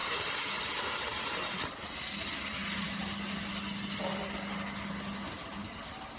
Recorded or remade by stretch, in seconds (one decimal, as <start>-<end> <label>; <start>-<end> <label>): 0.0-6.2 recorded